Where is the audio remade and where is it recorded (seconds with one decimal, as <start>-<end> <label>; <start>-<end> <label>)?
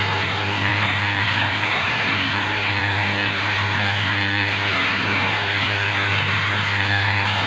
0.0-7.5 remade